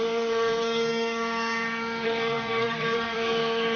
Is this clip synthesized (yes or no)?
yes